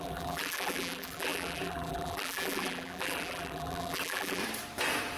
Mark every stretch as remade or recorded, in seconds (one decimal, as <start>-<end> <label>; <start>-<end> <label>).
0.0-4.4 remade; 4.4-5.2 recorded

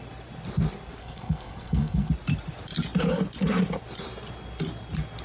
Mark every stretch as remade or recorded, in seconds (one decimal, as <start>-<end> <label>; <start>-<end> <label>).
0.0-1.0 recorded; 1.0-2.1 remade; 2.1-5.2 recorded